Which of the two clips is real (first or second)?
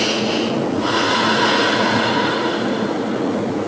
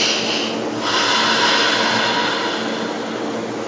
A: second